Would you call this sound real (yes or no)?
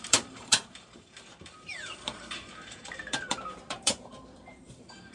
no